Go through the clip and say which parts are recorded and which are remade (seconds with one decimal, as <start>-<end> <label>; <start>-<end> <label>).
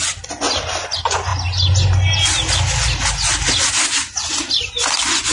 0.0-5.3 recorded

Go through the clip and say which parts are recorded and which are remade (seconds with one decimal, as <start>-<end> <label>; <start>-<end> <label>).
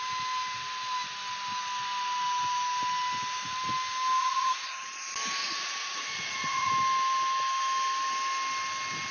0.0-4.2 recorded; 4.2-4.9 remade; 4.9-5.4 recorded; 5.4-6.7 remade; 6.7-9.1 recorded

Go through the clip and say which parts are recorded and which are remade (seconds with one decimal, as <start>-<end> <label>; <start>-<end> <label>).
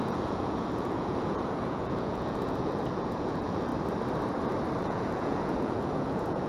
0.0-3.7 remade; 3.7-4.8 recorded; 4.8-6.5 remade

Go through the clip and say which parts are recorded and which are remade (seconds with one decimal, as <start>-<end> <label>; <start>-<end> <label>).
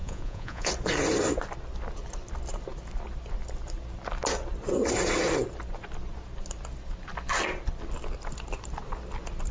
0.0-0.7 remade; 0.7-9.5 recorded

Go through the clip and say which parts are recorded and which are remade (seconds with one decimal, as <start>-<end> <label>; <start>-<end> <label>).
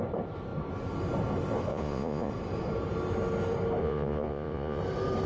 0.0-1.7 recorded; 1.7-2.3 remade; 2.3-3.8 recorded; 3.8-4.8 remade; 4.8-5.3 recorded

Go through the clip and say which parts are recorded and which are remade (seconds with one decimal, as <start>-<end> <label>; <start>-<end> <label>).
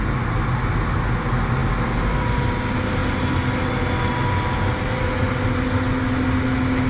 0.0-6.9 recorded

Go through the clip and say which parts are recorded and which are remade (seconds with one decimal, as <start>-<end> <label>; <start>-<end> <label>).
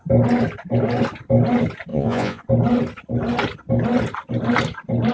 0.0-1.9 recorded; 1.9-2.4 remade; 2.4-5.1 recorded